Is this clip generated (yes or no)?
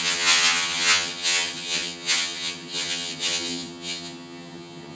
yes